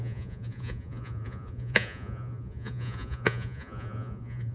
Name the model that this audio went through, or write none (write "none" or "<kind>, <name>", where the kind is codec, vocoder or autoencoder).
vocoder, Vocos